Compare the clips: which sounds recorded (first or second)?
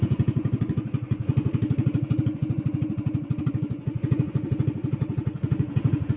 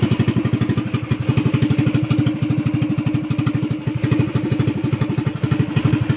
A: second